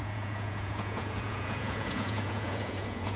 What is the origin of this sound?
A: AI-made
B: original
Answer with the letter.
A